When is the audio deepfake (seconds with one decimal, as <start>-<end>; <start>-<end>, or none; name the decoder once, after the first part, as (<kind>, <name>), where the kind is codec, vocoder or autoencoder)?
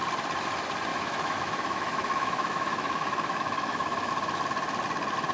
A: 0.9-4.1 (autoencoder, DAC-VAE)